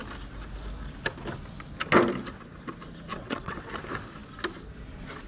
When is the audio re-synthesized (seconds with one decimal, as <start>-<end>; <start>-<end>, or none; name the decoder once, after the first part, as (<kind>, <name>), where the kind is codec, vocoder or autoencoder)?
3.1-3.7 (vocoder, WaveNeXt)